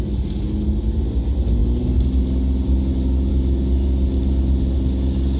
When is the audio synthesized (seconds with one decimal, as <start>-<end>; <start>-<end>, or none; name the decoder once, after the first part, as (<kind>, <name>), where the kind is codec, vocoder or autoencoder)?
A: none